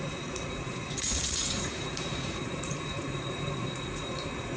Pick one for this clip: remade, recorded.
remade